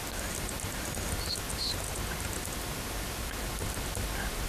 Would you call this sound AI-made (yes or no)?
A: no